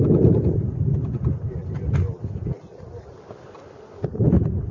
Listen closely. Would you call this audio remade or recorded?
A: recorded